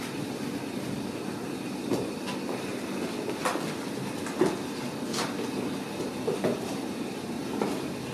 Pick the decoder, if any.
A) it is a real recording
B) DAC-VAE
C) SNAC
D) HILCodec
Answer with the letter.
A